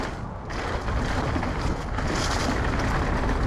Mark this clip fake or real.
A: real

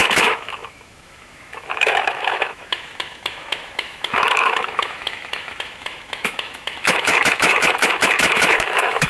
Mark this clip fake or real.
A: fake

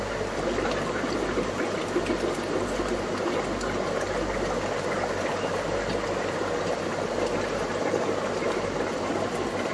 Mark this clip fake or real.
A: real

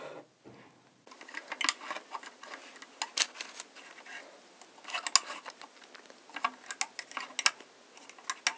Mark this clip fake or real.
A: real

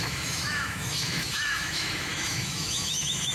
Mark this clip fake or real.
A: fake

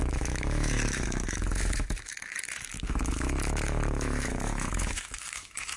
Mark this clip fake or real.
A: fake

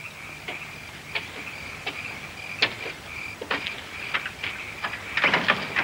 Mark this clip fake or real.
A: real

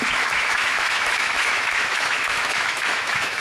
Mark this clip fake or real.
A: fake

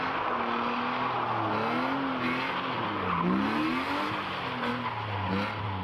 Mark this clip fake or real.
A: real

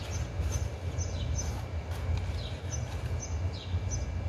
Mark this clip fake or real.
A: real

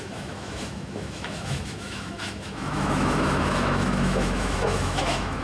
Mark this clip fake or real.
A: fake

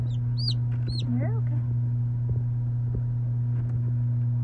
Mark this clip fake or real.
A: real